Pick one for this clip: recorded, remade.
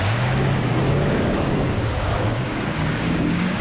remade